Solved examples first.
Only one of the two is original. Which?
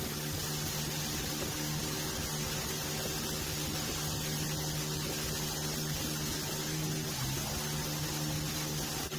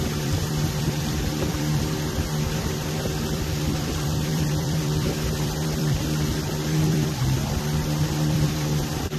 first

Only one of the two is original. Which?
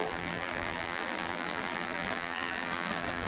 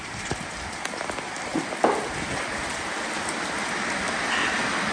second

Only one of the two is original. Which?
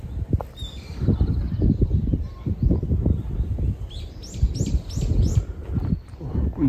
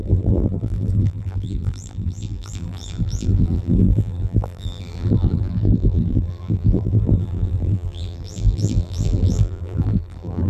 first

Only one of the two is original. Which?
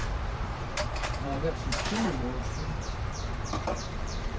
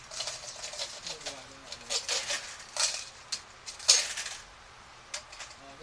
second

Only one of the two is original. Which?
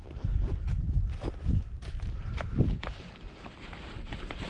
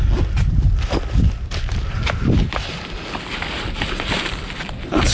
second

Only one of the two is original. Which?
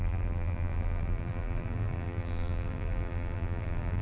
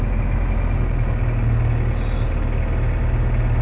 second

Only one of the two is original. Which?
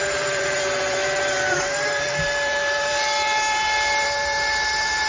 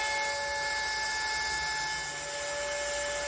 second